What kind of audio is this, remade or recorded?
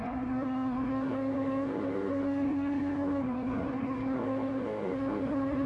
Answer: remade